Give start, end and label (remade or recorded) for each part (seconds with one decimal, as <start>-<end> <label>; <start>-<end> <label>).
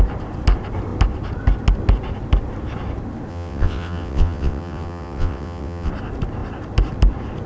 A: 0.0-3.3 recorded; 3.3-5.9 remade; 5.9-7.5 recorded